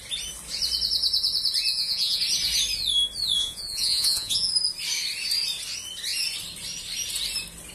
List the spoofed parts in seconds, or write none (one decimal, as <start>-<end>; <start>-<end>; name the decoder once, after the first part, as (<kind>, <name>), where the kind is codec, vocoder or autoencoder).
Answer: 1.7-2.2 (vocoder, Vocos); 3.4-4.5